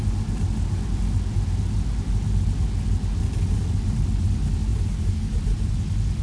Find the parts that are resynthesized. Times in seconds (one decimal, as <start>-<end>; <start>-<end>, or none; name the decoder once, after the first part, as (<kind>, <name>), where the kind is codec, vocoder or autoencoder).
4.7-5.8 (vocoder, BigVGAN v2)